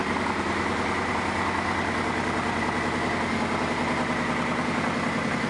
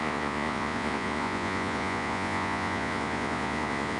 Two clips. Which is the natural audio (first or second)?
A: first